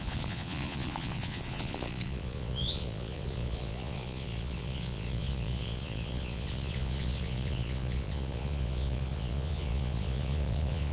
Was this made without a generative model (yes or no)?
no